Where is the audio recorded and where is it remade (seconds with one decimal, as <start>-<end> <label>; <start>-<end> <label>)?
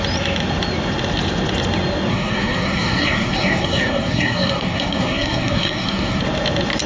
0.0-2.1 recorded; 2.1-6.2 remade; 6.2-6.9 recorded